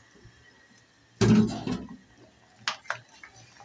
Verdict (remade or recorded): recorded